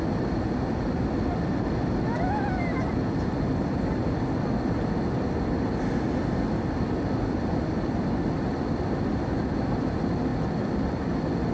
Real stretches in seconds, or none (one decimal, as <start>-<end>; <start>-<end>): 0.0-11.5